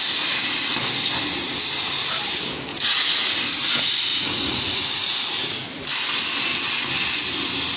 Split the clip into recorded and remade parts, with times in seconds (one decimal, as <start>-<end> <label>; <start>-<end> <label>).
0.0-2.7 recorded; 2.7-3.3 remade; 3.3-4.1 recorded; 4.1-5.9 remade; 5.9-7.8 recorded